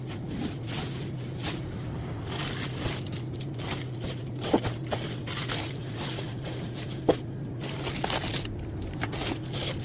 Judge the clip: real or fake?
real